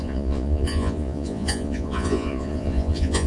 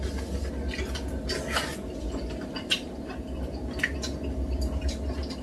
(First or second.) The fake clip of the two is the first